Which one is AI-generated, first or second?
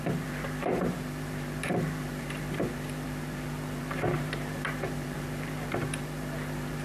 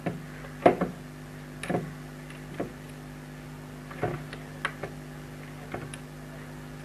first